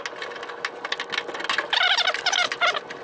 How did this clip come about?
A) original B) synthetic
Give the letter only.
A